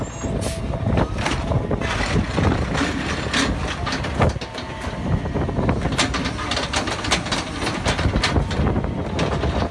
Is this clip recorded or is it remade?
recorded